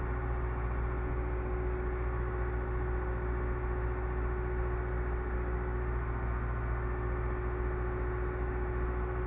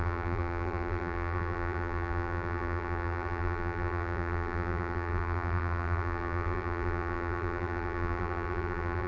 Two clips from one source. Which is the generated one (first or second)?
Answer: second